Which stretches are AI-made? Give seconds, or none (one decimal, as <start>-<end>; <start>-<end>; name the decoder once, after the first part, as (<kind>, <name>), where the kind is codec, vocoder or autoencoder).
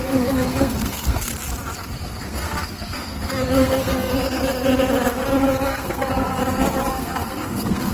0.0-1.3 (codec, SNAC); 2.2-4.4; 5.4-6.4; 6.9-7.9